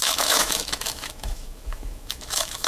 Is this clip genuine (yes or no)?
no